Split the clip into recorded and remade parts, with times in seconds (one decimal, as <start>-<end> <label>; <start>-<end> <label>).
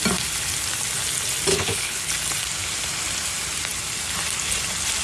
0.0-1.5 recorded; 1.5-2.1 remade; 2.1-5.0 recorded